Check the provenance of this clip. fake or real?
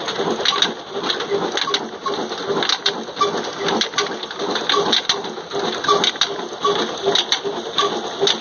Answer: real